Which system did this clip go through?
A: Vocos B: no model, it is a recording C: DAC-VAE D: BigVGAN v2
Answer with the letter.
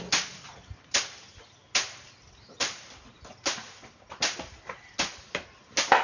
B